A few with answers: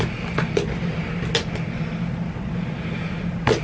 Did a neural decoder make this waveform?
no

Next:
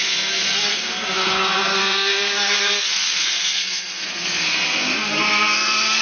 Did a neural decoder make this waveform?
yes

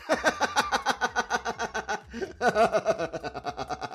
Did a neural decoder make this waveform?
no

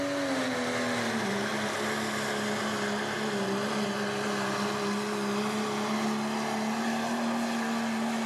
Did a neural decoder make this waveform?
no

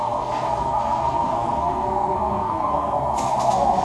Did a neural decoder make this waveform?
yes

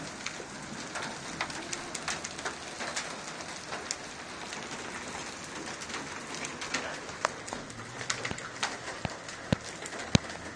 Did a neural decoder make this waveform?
no